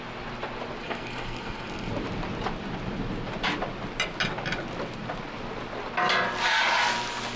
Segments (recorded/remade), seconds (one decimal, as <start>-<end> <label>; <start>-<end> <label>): 0.0-0.8 recorded; 0.8-1.9 remade; 1.9-7.4 recorded